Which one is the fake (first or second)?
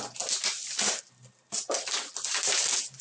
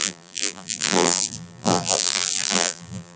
second